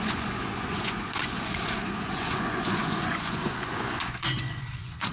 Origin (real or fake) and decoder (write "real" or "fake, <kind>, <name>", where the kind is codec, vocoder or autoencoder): fake, vocoder, Vocos